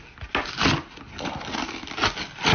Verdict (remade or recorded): recorded